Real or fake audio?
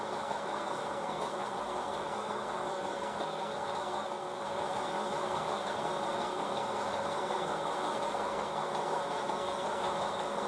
fake